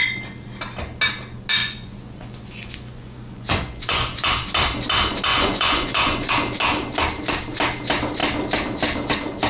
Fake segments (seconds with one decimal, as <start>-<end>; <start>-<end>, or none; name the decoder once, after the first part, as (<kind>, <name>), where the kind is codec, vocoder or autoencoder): 1.6-4.3 (vocoder, Vocos); 5.3-6.3